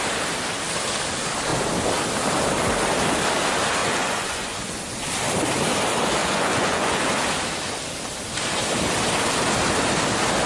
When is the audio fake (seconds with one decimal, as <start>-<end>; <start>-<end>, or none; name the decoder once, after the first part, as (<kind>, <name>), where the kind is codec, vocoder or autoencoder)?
3.8-4.8 (vocoder, Vocos); 6.2-7.0